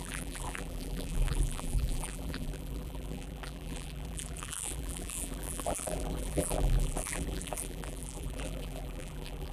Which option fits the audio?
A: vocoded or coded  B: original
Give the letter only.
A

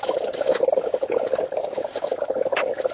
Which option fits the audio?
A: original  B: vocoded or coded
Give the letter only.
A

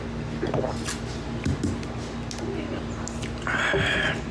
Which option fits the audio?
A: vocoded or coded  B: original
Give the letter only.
B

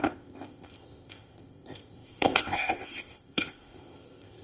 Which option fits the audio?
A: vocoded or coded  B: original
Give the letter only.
A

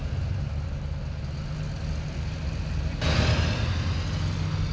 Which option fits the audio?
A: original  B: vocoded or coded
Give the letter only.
A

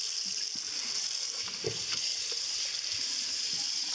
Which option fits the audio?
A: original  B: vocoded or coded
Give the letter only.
A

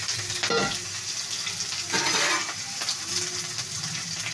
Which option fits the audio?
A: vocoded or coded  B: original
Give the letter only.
B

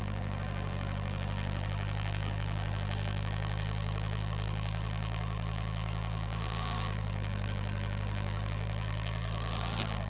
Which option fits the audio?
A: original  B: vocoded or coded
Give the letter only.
B